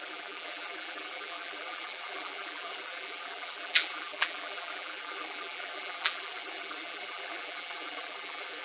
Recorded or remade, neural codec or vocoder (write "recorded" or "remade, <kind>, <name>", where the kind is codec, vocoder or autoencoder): remade, vocoder, BigVGAN v2